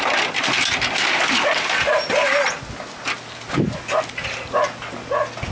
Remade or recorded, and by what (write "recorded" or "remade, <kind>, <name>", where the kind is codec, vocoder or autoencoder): recorded